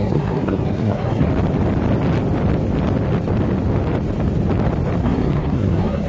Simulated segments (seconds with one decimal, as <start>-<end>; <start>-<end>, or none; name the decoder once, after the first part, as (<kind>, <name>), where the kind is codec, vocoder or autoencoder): 0.0-1.3 (codec, SNAC); 5.0-6.1